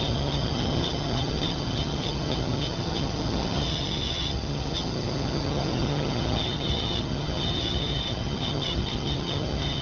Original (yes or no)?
no